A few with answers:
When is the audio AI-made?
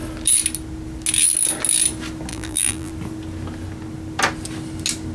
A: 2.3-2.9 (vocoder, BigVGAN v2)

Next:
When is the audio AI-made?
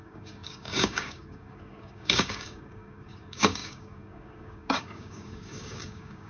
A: 0.0-6.3 (codec, DAC)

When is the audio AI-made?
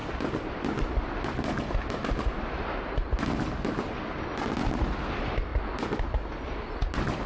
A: none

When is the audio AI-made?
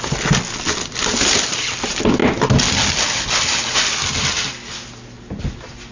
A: none